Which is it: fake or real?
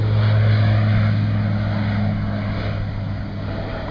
real